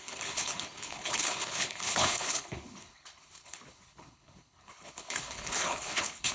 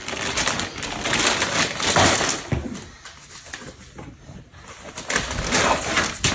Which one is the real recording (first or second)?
second